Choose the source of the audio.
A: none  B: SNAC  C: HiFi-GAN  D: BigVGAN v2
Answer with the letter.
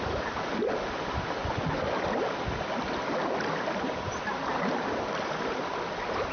A